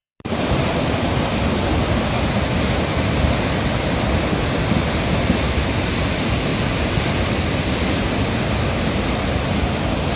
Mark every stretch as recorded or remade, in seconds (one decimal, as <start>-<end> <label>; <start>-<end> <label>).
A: 0.0-1.4 remade; 1.4-6.5 recorded; 6.5-7.3 remade; 7.3-10.2 recorded